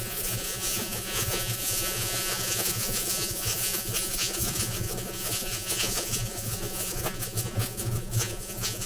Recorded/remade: remade